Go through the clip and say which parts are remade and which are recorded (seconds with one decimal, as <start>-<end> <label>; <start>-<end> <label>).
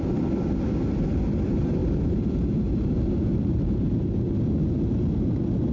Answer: 0.0-1.8 recorded; 1.8-4.3 remade; 4.3-5.7 recorded